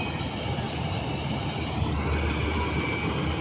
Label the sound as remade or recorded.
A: recorded